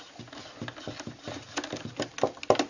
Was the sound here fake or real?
real